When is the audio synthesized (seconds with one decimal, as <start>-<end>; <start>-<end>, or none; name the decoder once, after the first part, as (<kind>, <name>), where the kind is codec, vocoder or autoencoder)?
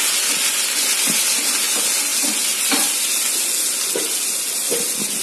none